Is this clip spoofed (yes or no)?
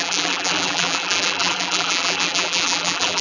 yes